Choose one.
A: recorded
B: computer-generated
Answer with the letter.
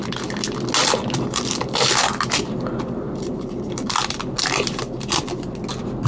A